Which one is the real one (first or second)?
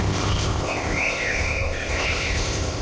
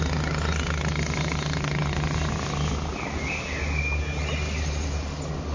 second